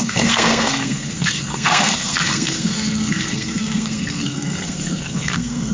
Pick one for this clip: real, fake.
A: fake